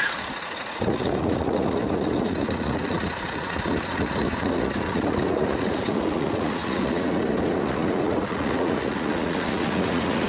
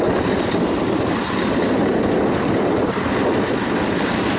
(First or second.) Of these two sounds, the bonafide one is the second